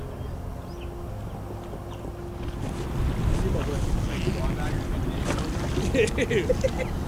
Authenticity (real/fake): real